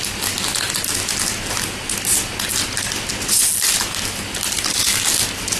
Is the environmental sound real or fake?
real